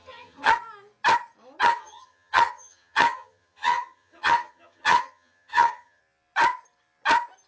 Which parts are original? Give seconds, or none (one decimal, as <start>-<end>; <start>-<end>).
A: 0.5-1.6; 6.0-7.5